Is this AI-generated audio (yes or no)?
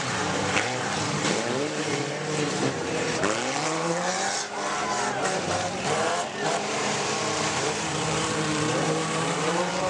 yes